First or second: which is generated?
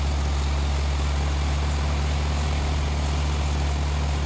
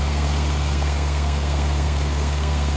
second